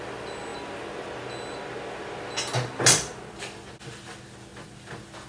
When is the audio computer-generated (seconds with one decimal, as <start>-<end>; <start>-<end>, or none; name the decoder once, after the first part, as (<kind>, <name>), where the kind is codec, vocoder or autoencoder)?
none